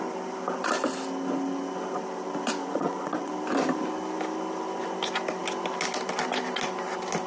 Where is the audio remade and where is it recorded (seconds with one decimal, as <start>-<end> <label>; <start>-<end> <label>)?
0.0-2.6 recorded; 2.6-3.3 remade; 3.3-7.3 recorded